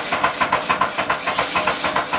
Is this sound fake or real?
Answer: real